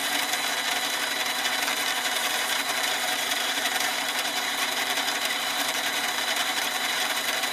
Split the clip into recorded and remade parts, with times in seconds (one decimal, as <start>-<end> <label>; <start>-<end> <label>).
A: 0.0-1.4 recorded; 1.4-7.5 remade